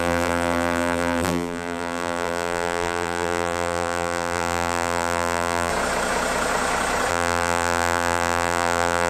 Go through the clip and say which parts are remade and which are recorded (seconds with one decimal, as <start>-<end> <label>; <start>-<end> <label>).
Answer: 0.0-5.7 remade; 5.7-7.1 recorded; 7.1-9.1 remade